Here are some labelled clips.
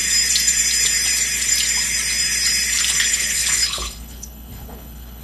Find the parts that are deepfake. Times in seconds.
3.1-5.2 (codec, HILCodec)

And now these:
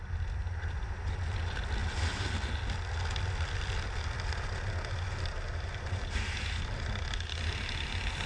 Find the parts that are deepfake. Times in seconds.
none

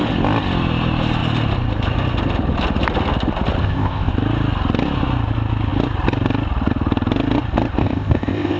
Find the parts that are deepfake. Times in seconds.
3.6-4.1 (codec, ZipCodec); 7.8-8.6

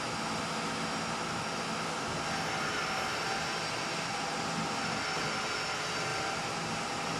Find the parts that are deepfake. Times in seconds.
6.1-7.2 (vocoder, BigVGAN v2)